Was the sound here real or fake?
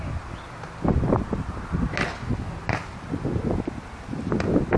real